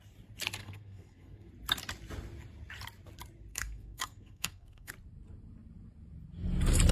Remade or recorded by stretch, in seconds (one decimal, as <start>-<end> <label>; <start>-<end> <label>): 0.0-0.6 recorded; 0.6-1.5 remade; 1.5-3.5 recorded; 3.5-4.9 remade; 4.9-6.9 recorded